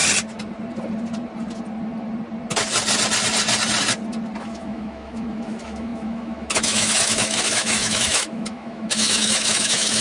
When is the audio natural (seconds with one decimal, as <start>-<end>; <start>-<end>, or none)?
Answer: 0.0-4.4